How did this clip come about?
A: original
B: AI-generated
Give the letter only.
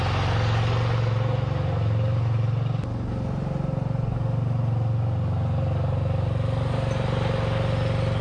A